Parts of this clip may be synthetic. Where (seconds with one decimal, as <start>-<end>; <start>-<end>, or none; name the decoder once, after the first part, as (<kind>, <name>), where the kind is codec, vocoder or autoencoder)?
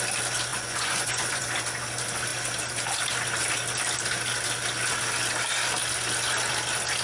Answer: 0.5-1.4 (vocoder, Vocos)